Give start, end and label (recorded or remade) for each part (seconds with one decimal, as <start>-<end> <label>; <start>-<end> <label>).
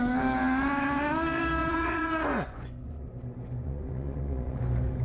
0.0-1.6 recorded; 1.6-4.6 remade; 4.6-5.0 recorded